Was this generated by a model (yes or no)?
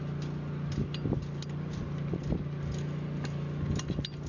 no